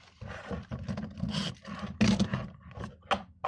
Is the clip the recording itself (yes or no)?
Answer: yes